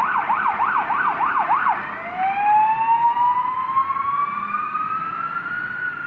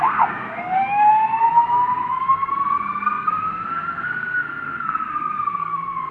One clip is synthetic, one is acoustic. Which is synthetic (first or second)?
second